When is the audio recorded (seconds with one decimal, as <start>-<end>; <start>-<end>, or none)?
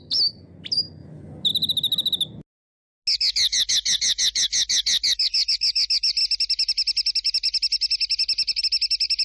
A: 0.0-9.2